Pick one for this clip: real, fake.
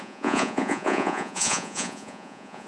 fake